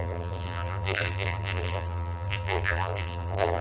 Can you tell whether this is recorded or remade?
remade